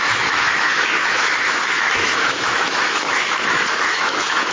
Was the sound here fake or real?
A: fake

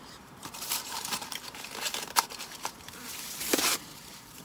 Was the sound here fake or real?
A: fake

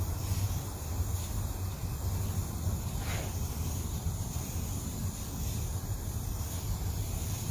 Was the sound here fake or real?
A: fake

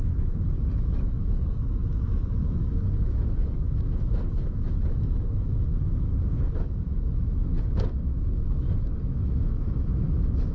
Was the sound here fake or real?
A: fake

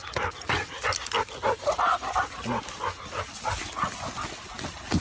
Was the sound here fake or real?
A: real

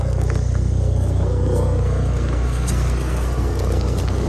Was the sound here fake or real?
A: fake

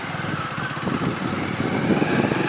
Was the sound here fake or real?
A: real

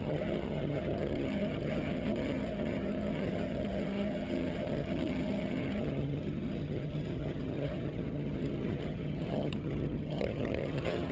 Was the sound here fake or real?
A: fake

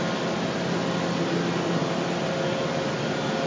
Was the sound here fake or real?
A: real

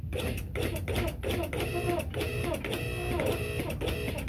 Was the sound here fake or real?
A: real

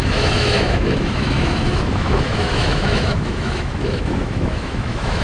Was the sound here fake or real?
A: fake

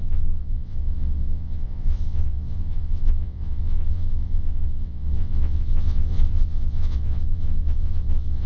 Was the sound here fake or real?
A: fake